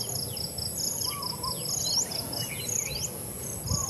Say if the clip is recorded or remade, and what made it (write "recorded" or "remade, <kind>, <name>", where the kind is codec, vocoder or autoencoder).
recorded